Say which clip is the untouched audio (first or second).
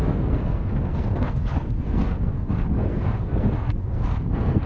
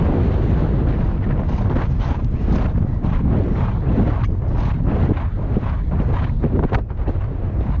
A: second